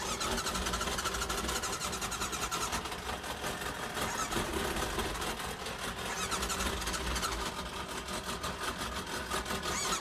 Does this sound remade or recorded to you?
recorded